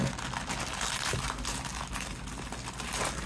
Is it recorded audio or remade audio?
recorded